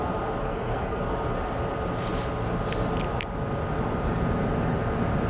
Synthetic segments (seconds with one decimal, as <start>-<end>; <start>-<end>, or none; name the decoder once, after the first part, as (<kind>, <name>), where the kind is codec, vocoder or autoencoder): 0.4-1.0 (codec, SNAC)